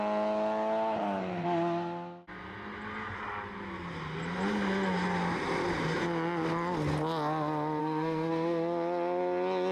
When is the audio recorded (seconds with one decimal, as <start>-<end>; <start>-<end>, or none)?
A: 0.0-7.8; 8.3-9.7